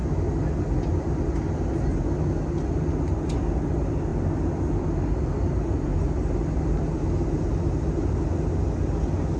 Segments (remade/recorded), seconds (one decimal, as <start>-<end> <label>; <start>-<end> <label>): 0.0-9.4 recorded